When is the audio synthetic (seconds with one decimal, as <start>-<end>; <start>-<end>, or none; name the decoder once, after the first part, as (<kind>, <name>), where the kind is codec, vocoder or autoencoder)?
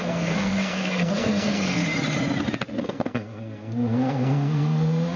0.0-1.8 (codec, SNAC); 2.8-5.2